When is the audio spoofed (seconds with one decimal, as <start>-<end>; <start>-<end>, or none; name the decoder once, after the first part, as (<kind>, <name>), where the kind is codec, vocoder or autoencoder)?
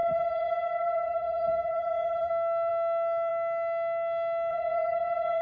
0.0-2.3 (vocoder, Vocos); 4.5-5.4